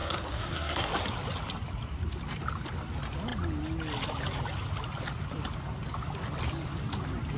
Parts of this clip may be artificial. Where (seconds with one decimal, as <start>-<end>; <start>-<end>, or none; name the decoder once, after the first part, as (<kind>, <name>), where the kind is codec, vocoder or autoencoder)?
0.0-0.9 (codec, SNAC)